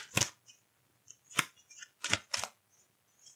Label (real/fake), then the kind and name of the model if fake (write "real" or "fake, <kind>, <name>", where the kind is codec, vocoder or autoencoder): real